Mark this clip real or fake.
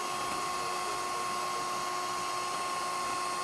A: real